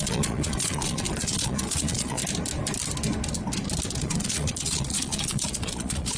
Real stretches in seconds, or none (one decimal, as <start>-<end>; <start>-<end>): 2.2-4.0